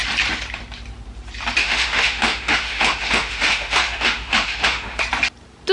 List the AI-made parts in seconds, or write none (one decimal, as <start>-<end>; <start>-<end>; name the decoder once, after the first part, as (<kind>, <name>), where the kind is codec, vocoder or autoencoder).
1.6-5.0 (autoencoder, DAC-VAE)